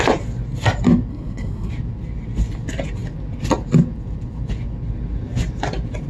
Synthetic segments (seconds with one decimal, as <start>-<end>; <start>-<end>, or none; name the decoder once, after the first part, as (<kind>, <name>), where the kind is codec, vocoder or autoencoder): 1.1-1.7 (codec, SNAC)